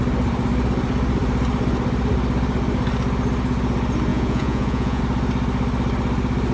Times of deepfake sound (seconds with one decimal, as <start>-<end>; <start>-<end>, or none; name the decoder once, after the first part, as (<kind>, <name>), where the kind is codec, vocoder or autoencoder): 4.1-5.0 (vocoder, Vocos)